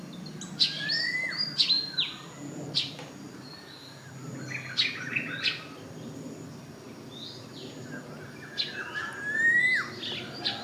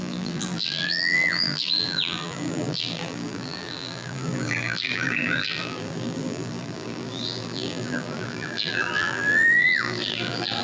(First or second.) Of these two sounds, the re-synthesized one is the second